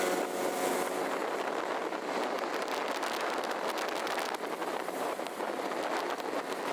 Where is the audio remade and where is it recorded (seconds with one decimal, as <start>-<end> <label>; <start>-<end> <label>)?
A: 0.0-4.6 recorded; 4.6-5.9 remade; 5.9-6.7 recorded